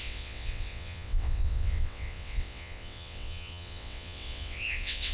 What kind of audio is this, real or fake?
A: fake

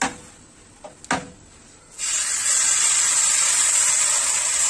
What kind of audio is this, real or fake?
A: real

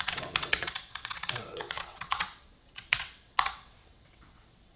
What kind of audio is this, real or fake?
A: fake